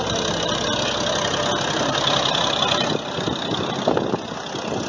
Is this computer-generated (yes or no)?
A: no